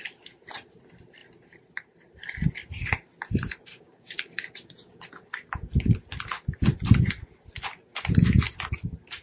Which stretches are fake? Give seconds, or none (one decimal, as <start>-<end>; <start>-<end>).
3.7-5.2